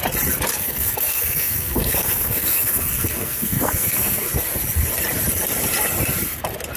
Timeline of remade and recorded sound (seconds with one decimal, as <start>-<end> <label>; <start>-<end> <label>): 0.0-0.5 recorded; 0.5-4.3 remade; 4.3-6.8 recorded